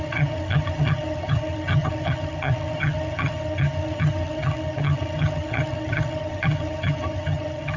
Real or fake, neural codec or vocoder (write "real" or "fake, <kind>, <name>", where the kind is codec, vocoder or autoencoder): fake, vocoder, HiFi-GAN